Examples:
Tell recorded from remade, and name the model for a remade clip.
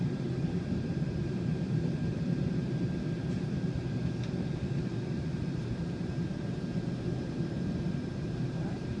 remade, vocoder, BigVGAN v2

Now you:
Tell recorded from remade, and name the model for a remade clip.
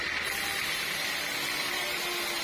recorded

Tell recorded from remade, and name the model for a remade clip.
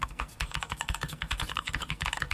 remade, codec, SNAC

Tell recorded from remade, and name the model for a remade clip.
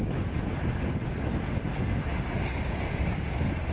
recorded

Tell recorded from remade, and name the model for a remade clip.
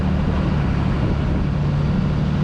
recorded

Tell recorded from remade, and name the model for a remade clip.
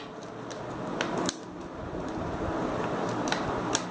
recorded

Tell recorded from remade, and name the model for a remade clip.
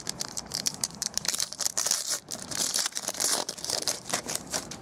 remade, vocoder, BigVGAN v2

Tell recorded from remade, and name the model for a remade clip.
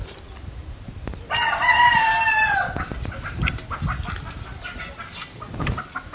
recorded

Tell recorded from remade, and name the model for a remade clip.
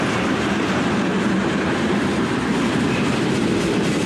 remade, vocoder, BigVGAN v2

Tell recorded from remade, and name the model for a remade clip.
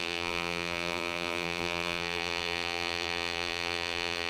remade, vocoder, BigVGAN v2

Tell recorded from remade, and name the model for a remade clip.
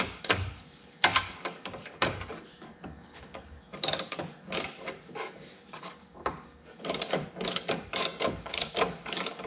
remade, codec, DAC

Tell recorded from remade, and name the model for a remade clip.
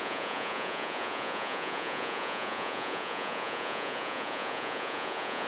remade, vocoder, Vocos